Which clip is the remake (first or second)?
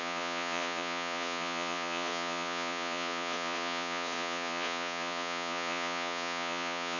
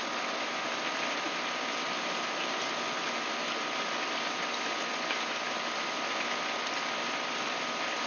first